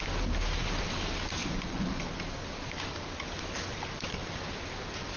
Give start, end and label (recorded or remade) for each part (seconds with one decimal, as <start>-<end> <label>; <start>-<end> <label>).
0.0-1.4 recorded; 1.4-2.0 remade; 2.0-5.2 recorded

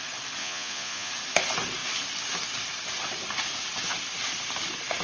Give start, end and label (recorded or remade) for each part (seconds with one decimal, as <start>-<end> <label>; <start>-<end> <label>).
0.0-0.4 recorded; 0.4-1.1 remade; 1.1-5.0 recorded

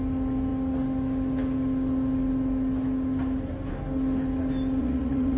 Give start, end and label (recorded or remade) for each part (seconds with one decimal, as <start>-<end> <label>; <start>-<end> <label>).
0.0-4.8 recorded; 4.8-5.4 remade

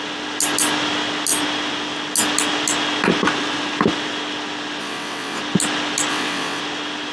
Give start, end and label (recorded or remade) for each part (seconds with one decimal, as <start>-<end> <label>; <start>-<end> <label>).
0.0-4.8 recorded; 4.8-5.4 remade; 5.4-6.1 recorded; 6.1-6.6 remade; 6.6-7.1 recorded